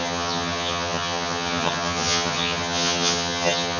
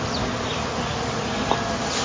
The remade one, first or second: first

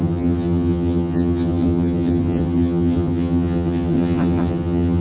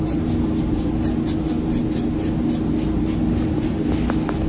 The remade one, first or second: first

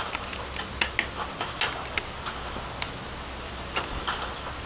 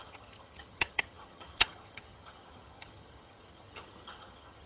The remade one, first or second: second